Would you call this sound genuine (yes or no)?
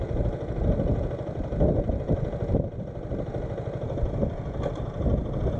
yes